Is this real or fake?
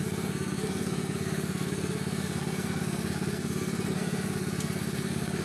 fake